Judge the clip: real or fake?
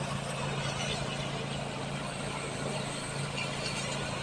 real